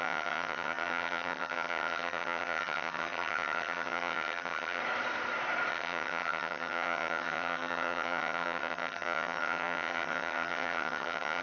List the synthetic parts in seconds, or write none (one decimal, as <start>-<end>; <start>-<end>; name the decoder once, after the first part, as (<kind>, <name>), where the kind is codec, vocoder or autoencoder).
0.0-4.8 (vocoder, HiFi-GAN); 5.7-11.4